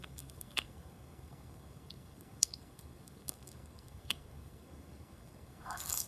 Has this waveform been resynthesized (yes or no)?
yes